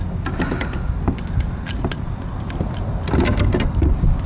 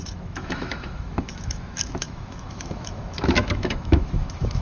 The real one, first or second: first